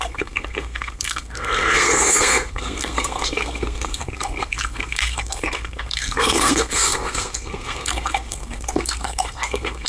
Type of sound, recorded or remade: remade